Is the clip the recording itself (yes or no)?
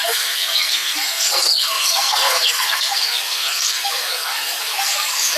no